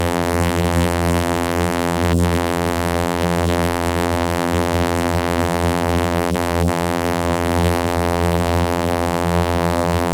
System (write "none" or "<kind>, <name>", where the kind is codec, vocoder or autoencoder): vocoder, BigVGAN v2